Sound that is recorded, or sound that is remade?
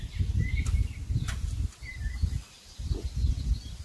recorded